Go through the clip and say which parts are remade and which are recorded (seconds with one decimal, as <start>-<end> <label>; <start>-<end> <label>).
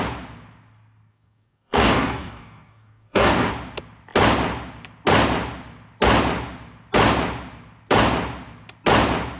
0.0-1.1 recorded; 1.1-3.5 remade; 3.5-9.4 recorded